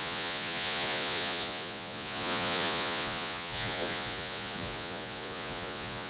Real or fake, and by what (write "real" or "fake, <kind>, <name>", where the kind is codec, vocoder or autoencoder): fake, vocoder, Vocos